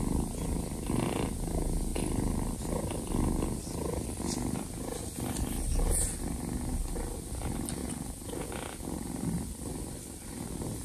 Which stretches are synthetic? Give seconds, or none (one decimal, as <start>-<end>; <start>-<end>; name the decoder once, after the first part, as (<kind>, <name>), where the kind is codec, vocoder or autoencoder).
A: 7.8-8.5 (vocoder, Vocos)